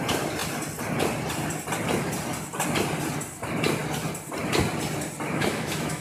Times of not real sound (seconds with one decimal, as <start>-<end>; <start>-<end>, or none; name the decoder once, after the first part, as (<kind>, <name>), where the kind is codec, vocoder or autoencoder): 5.3-6.0 (autoencoder, DAC-VAE)